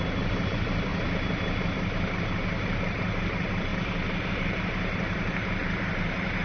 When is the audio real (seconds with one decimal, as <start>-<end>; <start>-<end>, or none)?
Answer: 0.9-2.4; 3.7-4.3